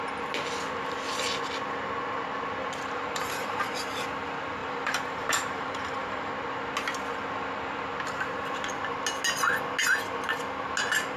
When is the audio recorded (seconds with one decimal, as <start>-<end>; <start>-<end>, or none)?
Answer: 0.0-2.6; 4.0-4.6; 6.3-11.2